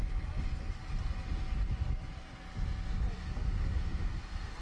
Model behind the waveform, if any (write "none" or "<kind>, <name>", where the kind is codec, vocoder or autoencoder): none